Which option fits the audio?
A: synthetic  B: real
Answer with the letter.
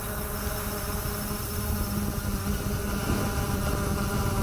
B